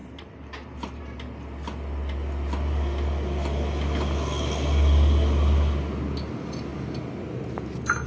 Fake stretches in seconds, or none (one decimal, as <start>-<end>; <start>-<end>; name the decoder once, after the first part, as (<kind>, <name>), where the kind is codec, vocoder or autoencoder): none